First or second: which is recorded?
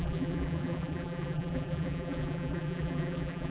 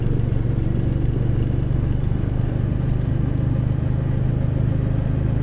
second